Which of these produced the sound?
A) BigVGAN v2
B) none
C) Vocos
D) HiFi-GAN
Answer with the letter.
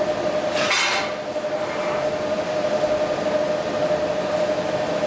B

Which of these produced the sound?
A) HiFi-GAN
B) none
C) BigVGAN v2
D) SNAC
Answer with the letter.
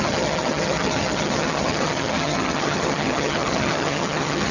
A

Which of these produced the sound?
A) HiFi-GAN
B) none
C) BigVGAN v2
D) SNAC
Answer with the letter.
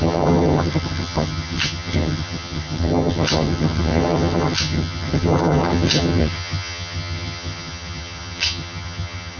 A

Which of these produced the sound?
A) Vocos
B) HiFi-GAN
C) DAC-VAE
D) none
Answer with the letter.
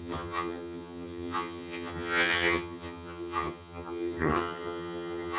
B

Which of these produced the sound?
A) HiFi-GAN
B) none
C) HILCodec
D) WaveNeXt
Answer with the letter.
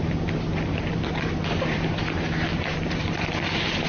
B